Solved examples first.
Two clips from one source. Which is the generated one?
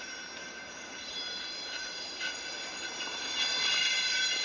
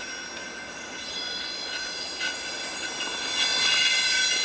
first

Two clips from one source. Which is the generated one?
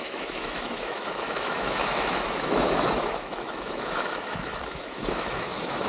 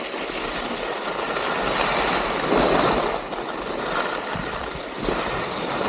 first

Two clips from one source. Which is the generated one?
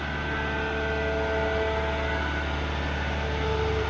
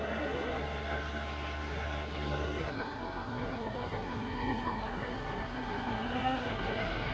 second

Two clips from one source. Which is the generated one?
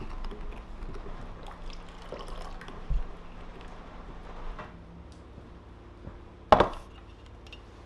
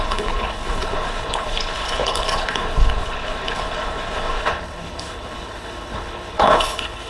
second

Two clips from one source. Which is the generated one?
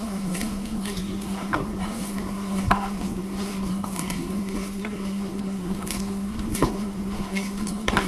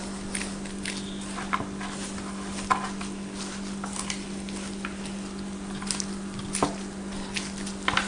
first